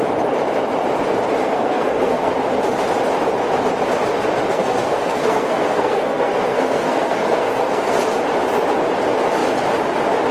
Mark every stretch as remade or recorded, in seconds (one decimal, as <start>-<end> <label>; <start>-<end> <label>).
0.0-1.4 recorded; 1.4-2.3 remade; 2.3-4.5 recorded; 4.5-8.0 remade; 8.0-10.3 recorded